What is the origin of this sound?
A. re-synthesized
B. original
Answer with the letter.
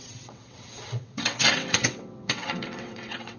A